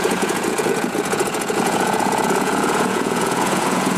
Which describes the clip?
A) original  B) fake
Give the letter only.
B